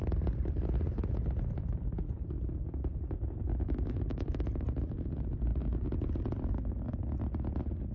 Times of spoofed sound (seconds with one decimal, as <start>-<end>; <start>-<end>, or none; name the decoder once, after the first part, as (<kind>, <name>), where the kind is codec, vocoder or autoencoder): none